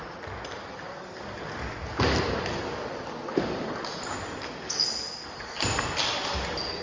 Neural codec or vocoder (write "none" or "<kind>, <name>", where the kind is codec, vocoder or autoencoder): none